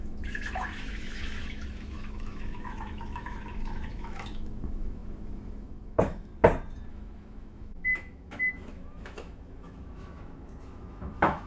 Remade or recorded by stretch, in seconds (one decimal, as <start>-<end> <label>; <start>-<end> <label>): 0.0-6.3 remade; 6.3-6.9 recorded; 6.9-11.5 remade